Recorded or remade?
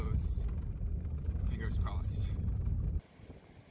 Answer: recorded